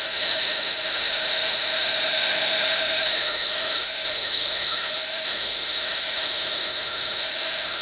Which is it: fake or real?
fake